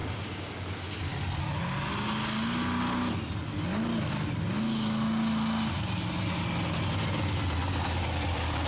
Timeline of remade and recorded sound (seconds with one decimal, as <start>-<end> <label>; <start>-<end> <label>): 0.0-0.5 remade; 0.5-8.7 recorded